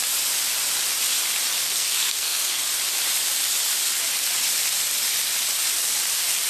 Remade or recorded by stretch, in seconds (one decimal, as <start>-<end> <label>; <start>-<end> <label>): 0.0-1.6 recorded; 1.6-2.6 remade; 2.6-6.5 recorded